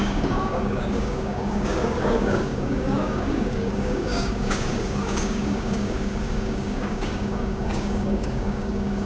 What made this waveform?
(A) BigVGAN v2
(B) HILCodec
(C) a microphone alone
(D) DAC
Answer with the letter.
D